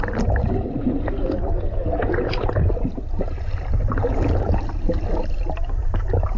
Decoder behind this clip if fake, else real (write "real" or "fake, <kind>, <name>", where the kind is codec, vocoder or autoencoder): real